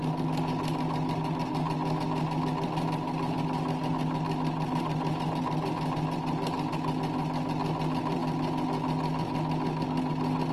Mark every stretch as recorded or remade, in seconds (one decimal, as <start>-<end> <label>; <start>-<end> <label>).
0.0-10.5 recorded